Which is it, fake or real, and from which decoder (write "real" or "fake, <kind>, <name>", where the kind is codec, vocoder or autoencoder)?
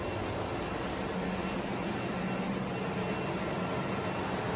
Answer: real